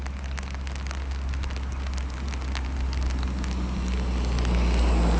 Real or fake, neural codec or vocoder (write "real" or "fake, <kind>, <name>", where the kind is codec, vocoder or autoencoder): real